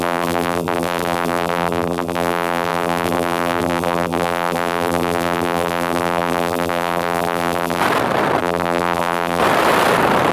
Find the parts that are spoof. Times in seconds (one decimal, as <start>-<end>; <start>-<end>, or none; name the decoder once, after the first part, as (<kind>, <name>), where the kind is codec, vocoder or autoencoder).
0.0-7.8 (vocoder, BigVGAN v2); 8.4-9.4